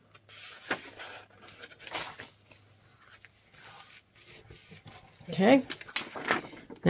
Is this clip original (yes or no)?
yes